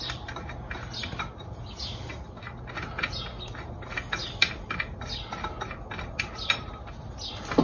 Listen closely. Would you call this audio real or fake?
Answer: real